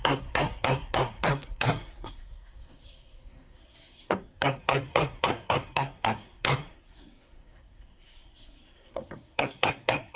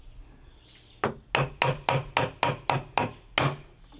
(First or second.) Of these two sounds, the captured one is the second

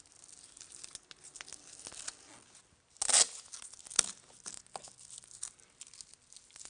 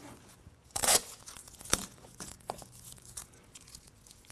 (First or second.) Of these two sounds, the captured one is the first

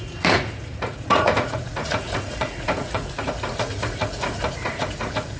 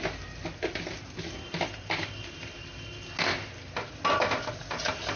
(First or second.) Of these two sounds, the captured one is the second